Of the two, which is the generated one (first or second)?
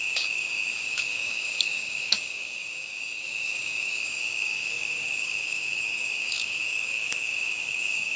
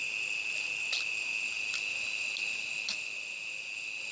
first